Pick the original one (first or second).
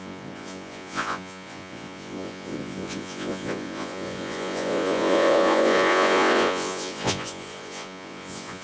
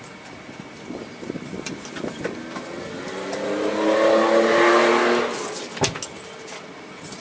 second